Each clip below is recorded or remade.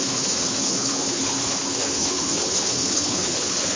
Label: remade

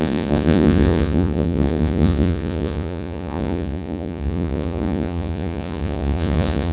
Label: remade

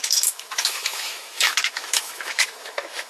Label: remade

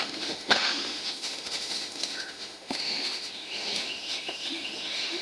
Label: remade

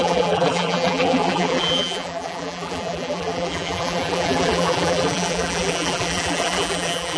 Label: remade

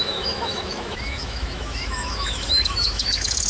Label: remade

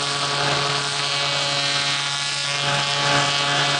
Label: recorded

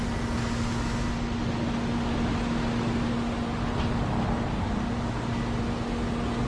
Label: recorded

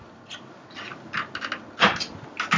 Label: recorded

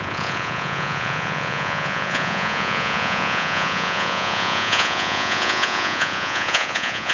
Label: remade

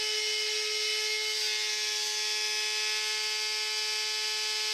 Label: recorded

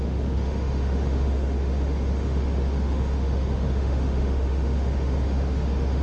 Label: remade